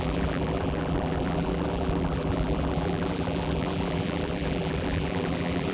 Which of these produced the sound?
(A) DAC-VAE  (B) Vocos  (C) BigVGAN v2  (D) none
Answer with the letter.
C